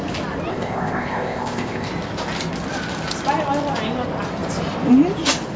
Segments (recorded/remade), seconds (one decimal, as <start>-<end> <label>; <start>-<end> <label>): 0.0-0.5 recorded; 0.5-1.9 remade; 1.9-5.6 recorded